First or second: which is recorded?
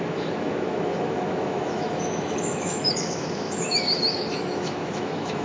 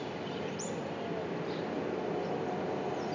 second